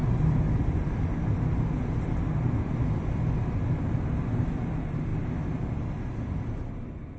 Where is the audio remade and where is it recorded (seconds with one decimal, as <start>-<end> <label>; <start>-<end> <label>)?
0.0-7.2 recorded

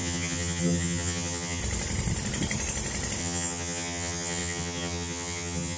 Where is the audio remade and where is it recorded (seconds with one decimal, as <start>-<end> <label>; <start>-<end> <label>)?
0.0-1.6 remade; 1.6-3.2 recorded; 3.2-5.8 remade

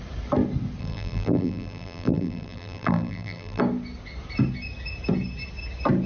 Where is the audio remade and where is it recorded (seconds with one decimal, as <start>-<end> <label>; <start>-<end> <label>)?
0.0-0.8 recorded; 0.8-3.6 remade; 3.6-6.1 recorded